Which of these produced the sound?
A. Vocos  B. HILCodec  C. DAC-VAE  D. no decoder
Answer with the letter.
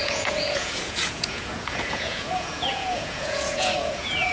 A